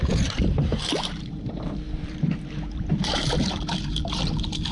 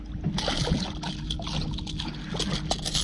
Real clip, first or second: second